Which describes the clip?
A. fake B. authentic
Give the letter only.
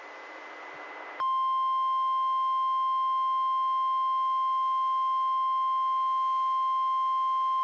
B